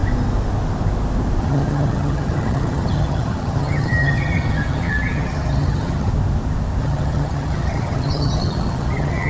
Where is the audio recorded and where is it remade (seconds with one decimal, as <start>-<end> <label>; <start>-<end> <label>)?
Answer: 0.0-1.4 recorded; 1.4-6.1 remade; 6.1-6.8 recorded; 6.8-9.3 remade